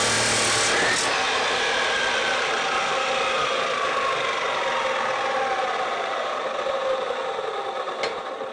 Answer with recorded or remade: recorded